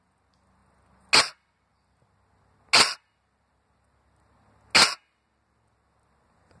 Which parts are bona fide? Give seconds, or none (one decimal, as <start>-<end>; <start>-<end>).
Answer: 0.0-6.6